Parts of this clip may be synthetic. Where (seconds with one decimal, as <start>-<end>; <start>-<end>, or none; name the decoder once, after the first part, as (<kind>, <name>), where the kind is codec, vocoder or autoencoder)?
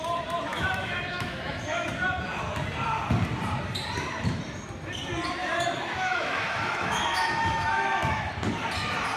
0.5-1.9 (autoencoder, DAC-VAE); 5.4-8.3